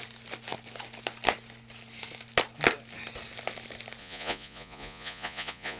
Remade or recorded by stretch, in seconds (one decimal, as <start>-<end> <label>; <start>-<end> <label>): 0.0-4.0 recorded; 4.0-5.8 remade